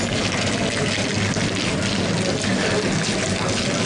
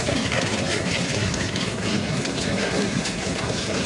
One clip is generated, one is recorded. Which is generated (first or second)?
second